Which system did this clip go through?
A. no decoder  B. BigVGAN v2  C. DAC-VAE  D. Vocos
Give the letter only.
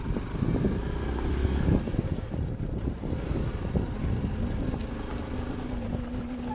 A